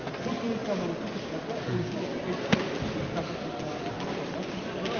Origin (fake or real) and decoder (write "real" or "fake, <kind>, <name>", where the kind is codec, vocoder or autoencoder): real